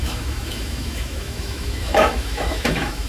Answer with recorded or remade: remade